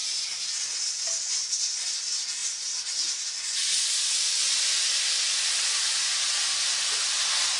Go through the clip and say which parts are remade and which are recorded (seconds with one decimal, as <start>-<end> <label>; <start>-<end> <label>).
0.0-7.6 recorded